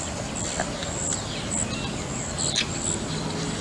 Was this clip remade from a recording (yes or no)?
no